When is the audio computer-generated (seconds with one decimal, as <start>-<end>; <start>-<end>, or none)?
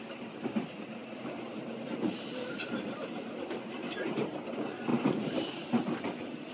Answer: 4.9-5.5